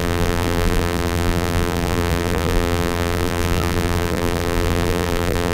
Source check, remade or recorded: remade